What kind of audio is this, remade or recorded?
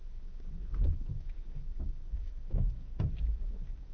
remade